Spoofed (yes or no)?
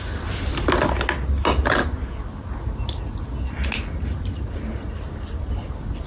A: no